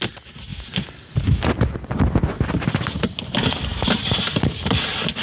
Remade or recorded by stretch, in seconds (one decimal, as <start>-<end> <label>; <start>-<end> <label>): 0.0-5.2 recorded